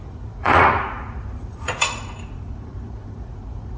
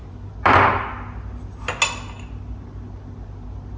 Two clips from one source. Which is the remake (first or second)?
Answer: first